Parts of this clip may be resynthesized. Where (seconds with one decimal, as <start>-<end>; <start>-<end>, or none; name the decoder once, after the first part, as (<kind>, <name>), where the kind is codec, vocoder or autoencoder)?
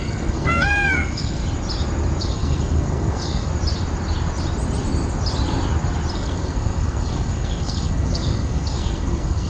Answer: 0.0-1.4 (codec, SNAC); 2.2-3.5; 6.1-9.5